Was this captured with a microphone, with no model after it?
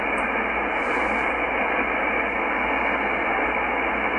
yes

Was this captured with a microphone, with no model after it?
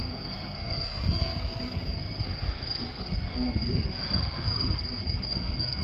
no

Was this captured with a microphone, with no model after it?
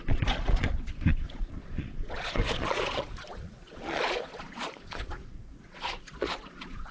no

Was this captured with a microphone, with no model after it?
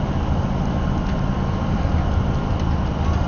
no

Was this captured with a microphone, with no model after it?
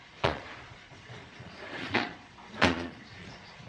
no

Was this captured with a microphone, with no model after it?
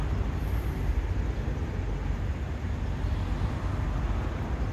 yes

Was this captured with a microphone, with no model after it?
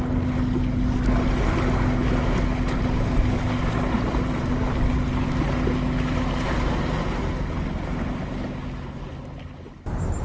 yes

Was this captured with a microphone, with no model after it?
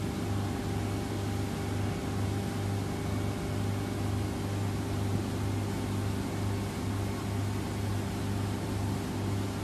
yes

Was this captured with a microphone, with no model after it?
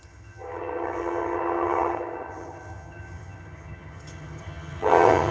no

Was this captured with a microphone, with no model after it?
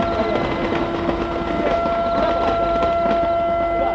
yes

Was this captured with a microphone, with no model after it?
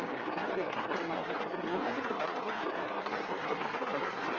no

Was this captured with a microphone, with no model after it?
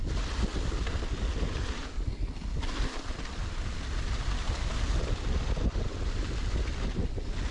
yes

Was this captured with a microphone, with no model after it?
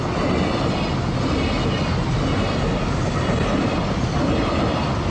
yes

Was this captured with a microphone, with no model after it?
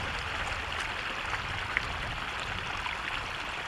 yes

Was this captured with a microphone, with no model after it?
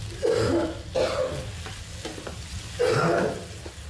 yes